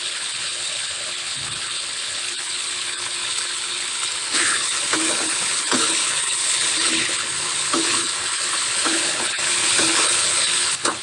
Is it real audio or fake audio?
fake